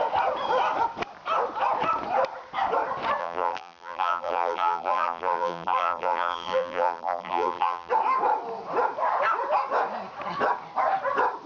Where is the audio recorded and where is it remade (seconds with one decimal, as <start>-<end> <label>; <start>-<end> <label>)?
0.0-3.2 recorded; 3.2-7.9 remade; 7.9-11.5 recorded